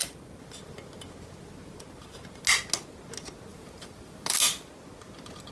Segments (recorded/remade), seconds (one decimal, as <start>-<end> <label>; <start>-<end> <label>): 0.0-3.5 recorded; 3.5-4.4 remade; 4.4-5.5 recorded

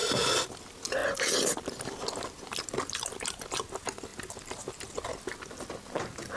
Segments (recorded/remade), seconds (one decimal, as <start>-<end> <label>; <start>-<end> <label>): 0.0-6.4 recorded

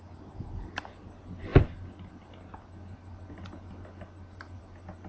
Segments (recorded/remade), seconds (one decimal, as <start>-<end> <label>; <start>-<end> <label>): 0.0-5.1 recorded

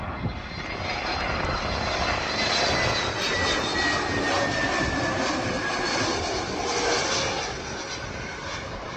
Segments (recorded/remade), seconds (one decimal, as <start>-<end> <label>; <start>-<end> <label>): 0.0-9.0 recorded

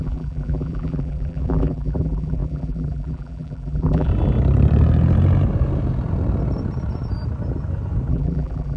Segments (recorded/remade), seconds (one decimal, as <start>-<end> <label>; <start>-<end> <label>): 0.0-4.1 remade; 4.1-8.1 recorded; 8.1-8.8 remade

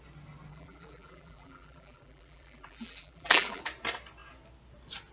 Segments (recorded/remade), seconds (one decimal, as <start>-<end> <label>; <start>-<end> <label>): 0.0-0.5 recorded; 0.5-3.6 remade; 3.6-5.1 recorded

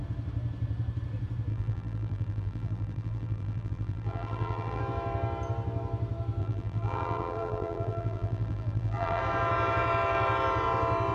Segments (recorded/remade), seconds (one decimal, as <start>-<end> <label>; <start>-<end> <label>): 0.0-1.5 recorded; 1.5-4.8 remade; 4.8-6.4 recorded; 6.4-9.2 remade; 9.2-11.1 recorded